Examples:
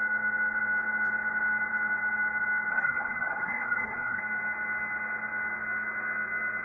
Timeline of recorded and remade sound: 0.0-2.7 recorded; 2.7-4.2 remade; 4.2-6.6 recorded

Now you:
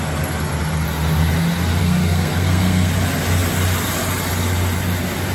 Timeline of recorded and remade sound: 0.0-1.8 recorded; 1.8-2.9 remade; 2.9-5.3 recorded

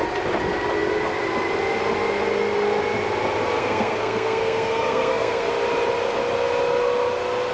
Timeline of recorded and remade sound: 0.0-3.6 recorded; 3.6-5.5 remade; 5.5-7.5 recorded

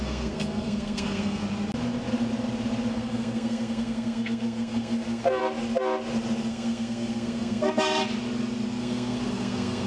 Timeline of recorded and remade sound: 0.0-1.4 remade; 1.4-2.9 recorded; 2.9-5.4 remade; 5.4-6.5 recorded; 6.5-8.0 remade; 8.0-8.8 recorded; 8.8-9.9 remade

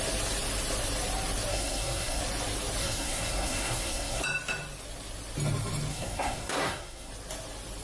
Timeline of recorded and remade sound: 0.0-1.5 recorded; 1.5-2.2 remade; 2.2-2.8 recorded; 2.8-4.2 remade; 4.2-5.9 recorded; 5.9-7.1 remade; 7.1-7.8 recorded

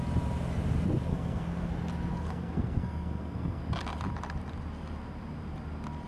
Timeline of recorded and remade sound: 0.0-1.1 recorded; 1.1-1.7 remade; 1.7-2.1 recorded; 2.1-3.6 remade; 3.6-6.1 recorded

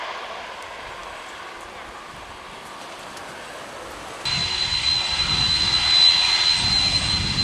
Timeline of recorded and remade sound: 0.0-7.4 recorded